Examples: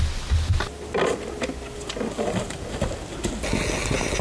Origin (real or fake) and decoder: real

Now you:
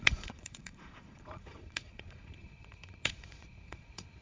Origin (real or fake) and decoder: fake, vocoder, Vocos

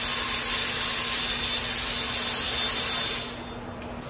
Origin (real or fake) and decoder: real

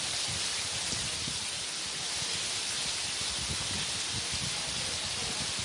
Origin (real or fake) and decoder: real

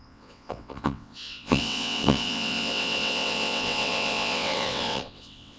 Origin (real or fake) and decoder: fake, vocoder, WaveNeXt